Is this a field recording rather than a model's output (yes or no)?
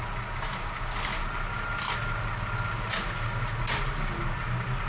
yes